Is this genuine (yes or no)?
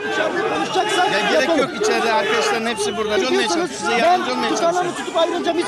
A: yes